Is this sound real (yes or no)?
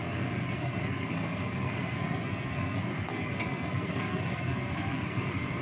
no